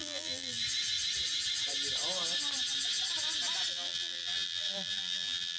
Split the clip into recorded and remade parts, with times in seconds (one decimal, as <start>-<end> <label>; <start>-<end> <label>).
0.0-0.6 remade; 0.6-3.7 recorded; 3.7-5.6 remade